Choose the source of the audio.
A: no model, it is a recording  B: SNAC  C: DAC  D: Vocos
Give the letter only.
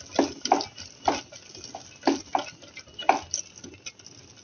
A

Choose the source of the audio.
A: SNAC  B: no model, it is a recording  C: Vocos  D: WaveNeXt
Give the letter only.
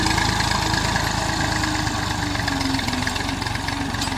B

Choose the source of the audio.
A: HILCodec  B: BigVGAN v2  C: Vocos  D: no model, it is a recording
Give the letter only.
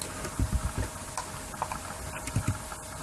D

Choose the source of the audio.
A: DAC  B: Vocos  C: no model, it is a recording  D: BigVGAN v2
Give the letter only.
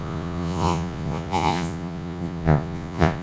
B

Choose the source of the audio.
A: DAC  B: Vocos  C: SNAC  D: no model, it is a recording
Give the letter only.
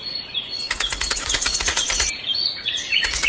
B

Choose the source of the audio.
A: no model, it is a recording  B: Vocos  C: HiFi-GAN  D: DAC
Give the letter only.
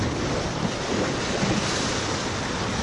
A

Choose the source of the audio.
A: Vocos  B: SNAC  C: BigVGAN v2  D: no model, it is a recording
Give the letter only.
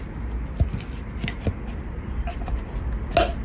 D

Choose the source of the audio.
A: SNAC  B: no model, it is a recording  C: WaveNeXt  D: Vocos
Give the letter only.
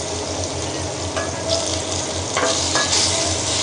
B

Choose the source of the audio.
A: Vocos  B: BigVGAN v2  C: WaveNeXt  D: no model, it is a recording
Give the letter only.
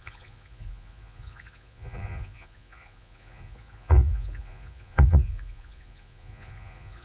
A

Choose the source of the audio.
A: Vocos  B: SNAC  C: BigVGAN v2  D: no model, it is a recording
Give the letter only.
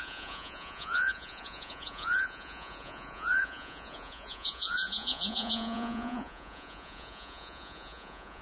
A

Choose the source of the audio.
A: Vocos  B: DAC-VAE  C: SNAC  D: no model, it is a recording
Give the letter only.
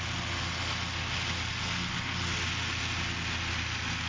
D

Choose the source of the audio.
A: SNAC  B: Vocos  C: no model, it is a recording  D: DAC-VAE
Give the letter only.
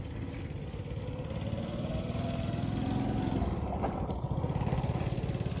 C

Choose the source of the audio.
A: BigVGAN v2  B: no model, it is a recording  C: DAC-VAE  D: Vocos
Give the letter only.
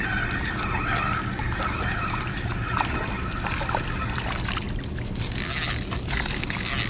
B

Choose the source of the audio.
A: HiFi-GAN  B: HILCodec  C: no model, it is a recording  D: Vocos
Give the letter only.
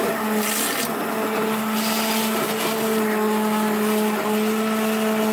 C